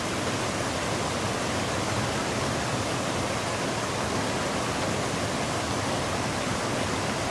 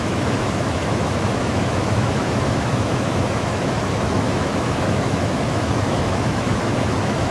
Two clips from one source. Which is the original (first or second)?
first